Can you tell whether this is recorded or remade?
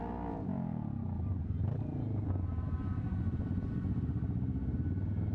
recorded